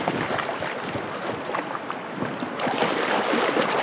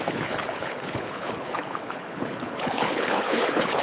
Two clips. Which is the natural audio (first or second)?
first